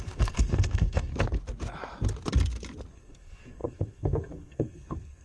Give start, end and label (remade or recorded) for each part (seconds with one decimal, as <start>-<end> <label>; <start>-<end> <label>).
0.0-1.1 remade; 1.1-2.9 recorded; 2.9-5.2 remade